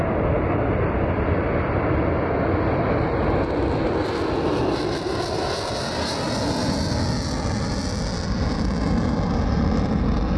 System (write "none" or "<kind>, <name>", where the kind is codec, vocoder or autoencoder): none